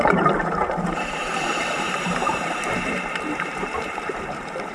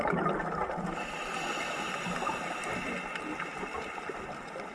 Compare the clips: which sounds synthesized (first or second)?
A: first